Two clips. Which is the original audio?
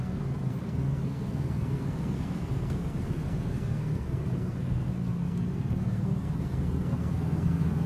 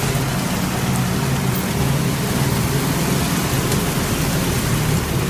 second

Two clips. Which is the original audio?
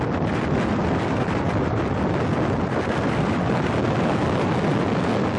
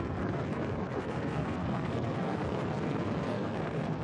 first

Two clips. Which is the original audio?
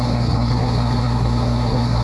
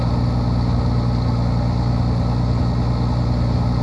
second